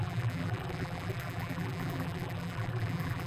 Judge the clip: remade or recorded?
remade